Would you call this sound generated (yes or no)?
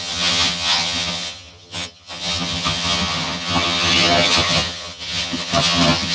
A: yes